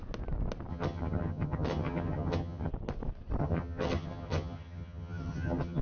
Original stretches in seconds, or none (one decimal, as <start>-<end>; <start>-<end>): 0.0-0.7; 2.7-3.4